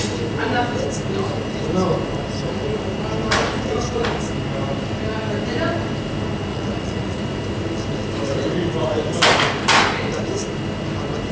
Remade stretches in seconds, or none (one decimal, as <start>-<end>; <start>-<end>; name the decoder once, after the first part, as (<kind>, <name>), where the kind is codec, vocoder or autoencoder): 6.5-7.2 (vocoder, Vocos)